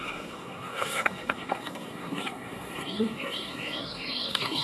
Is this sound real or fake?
fake